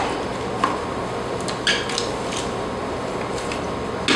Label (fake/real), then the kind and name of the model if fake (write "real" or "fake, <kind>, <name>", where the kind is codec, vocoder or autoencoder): real